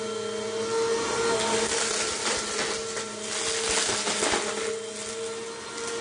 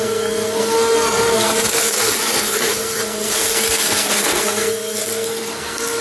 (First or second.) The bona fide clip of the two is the first